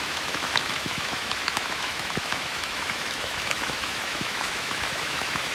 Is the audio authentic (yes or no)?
no